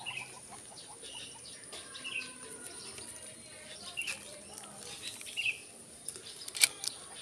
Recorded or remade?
recorded